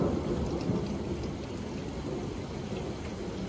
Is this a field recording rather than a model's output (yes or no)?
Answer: yes